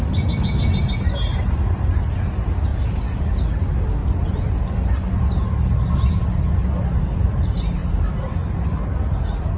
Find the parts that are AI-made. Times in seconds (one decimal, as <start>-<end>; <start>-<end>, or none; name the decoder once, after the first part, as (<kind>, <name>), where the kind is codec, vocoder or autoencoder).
4.0-4.5 (vocoder, BigVGAN v2)